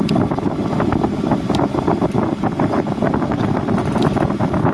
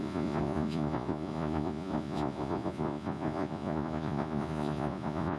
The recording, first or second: first